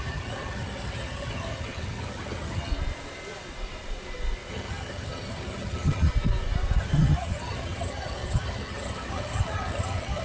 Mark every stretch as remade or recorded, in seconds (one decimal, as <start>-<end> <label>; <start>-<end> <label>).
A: 0.0-2.7 remade; 2.7-4.5 recorded; 4.5-6.1 remade; 6.1-6.8 recorded; 6.8-10.2 remade

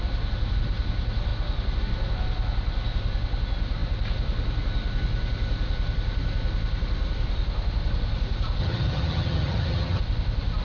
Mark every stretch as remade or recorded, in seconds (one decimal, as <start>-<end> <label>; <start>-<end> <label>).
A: 0.0-8.6 recorded; 8.6-10.0 remade; 10.0-10.6 recorded

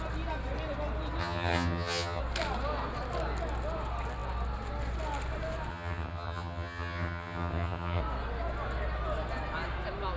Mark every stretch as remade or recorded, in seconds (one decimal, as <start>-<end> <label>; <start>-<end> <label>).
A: 0.0-1.2 recorded; 1.2-2.2 remade; 2.2-5.7 recorded; 5.7-8.0 remade; 8.0-10.2 recorded

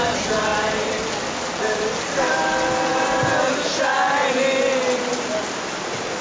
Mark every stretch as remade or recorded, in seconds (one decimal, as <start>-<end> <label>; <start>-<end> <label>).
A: 0.0-6.2 recorded

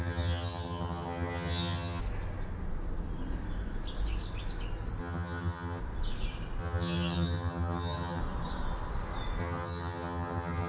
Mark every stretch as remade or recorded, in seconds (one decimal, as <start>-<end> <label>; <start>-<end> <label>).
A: 0.0-2.0 remade; 2.0-5.0 recorded; 5.0-5.8 remade; 5.8-6.6 recorded; 6.6-8.2 remade; 8.2-9.4 recorded; 9.4-10.7 remade